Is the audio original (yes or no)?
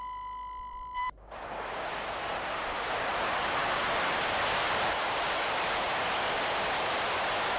no